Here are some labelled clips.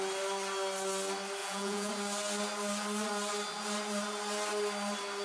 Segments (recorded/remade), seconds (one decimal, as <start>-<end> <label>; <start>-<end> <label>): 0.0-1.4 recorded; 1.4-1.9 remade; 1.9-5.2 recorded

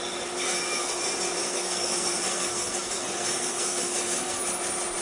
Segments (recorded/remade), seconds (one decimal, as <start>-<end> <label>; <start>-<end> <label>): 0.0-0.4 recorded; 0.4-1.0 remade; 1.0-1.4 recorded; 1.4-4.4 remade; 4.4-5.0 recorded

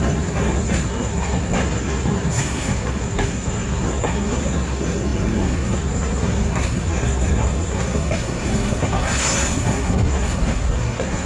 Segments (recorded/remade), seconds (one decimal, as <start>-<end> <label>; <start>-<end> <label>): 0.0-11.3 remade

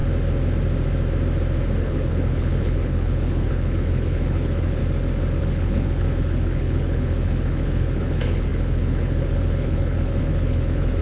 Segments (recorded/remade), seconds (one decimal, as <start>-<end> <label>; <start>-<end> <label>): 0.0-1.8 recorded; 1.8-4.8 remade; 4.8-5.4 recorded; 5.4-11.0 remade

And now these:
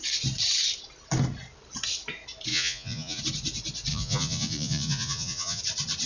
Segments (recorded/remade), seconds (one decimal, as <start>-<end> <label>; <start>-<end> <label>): 0.0-2.5 recorded; 2.5-3.2 remade; 3.2-3.9 recorded; 3.9-5.6 remade; 5.6-6.1 recorded